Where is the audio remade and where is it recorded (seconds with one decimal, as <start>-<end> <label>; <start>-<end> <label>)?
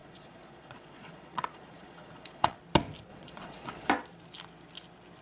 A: 0.0-2.6 remade; 2.6-3.1 recorded; 3.1-3.9 remade; 3.9-5.2 recorded